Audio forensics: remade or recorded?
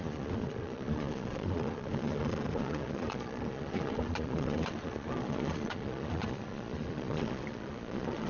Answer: remade